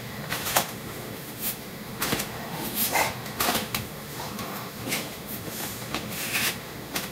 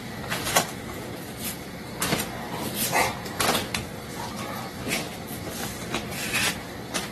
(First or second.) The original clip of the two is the second